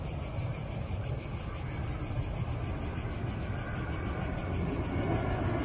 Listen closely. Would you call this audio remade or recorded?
recorded